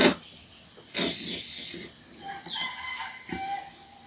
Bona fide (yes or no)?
yes